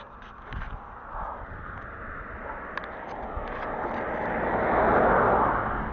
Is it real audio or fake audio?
real